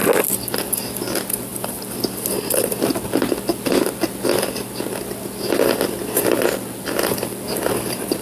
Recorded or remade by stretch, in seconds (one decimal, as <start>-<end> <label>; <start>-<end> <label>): 0.0-8.2 recorded

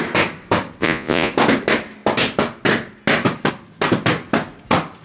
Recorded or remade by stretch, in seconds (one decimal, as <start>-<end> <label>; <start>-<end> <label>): 0.0-0.8 recorded; 0.8-1.3 remade; 1.3-5.0 recorded

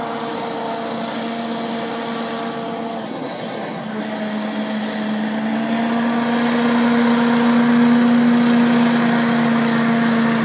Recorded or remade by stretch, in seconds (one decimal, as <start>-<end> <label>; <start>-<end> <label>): 0.0-3.0 recorded; 3.0-4.0 remade; 4.0-10.4 recorded

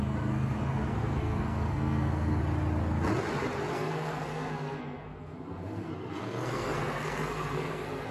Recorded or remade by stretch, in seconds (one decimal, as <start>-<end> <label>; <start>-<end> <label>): 0.0-2.4 remade; 2.4-3.7 recorded; 3.7-8.1 remade